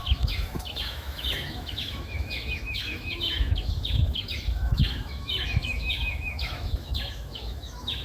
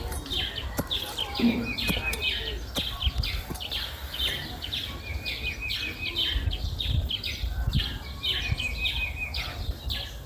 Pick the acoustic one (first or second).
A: second